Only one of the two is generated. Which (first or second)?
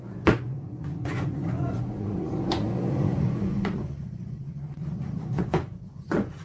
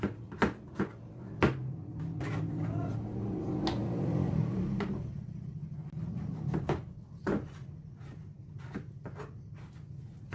first